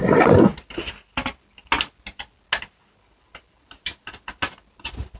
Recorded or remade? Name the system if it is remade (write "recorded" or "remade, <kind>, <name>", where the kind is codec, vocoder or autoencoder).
recorded